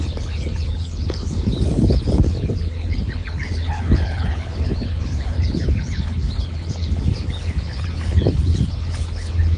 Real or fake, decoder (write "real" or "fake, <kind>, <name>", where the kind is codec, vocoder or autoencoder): fake, codec, HILCodec